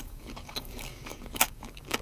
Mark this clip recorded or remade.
remade